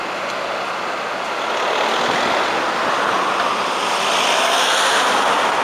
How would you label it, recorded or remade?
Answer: recorded